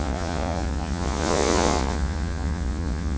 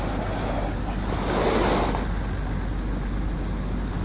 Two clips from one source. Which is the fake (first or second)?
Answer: first